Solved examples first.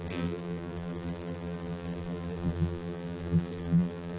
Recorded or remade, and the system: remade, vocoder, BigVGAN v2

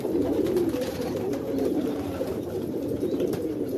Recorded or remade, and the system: remade, vocoder, BigVGAN v2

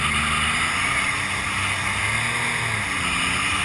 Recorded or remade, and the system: recorded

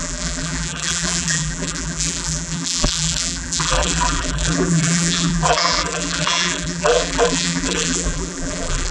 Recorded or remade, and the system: remade, vocoder, BigVGAN v2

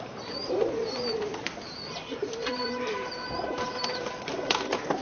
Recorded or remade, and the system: remade, vocoder, BigVGAN v2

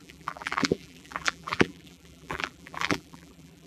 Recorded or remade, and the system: remade, vocoder, BigVGAN v2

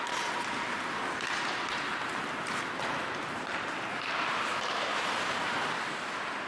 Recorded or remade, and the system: recorded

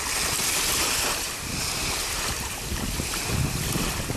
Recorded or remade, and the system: recorded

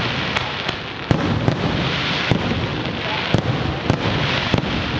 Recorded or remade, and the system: recorded